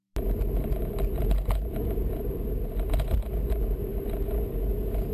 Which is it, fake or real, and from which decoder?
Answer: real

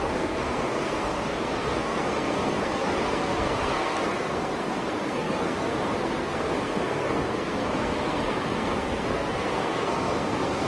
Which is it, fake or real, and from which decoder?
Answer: fake, codec, SNAC